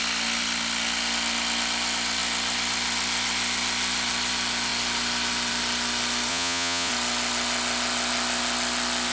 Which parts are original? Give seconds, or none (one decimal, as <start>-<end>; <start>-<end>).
0.0-6.3; 6.9-9.1